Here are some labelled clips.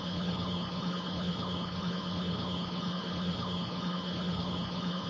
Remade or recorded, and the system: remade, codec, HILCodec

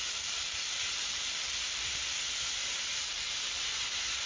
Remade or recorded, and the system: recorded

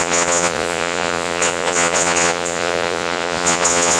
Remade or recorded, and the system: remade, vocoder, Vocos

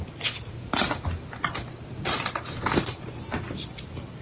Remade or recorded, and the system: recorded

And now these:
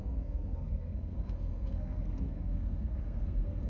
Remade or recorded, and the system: remade, codec, SNAC